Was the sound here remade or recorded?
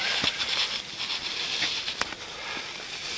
recorded